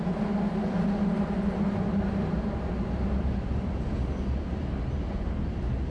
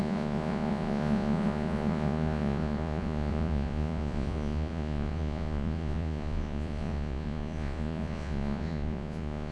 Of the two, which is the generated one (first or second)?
second